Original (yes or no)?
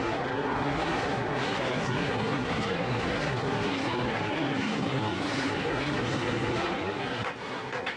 no